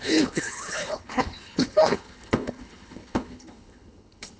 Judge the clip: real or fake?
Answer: fake